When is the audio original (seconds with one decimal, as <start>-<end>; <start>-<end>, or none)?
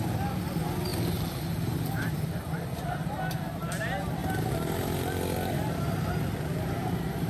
0.0-0.9; 3.2-7.3